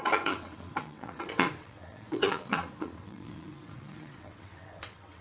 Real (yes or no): no